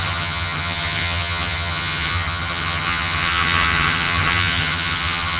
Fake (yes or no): yes